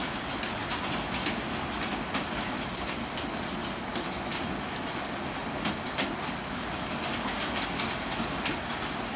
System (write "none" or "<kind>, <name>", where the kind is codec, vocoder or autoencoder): none